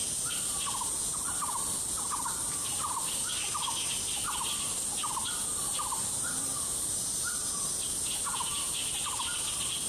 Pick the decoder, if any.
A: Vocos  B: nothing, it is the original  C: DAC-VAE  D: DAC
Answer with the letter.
B